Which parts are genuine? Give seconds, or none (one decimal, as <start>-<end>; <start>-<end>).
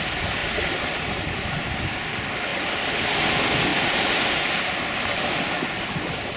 0.0-0.4; 1.8-3.7; 5.3-6.4